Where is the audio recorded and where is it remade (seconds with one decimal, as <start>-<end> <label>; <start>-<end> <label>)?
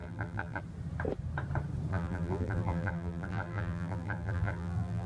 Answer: 0.0-0.6 remade; 0.6-1.9 recorded; 1.9-5.1 remade